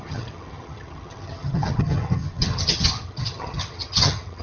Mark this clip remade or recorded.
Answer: remade